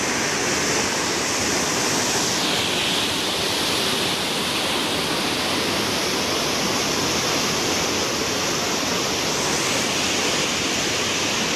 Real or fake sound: real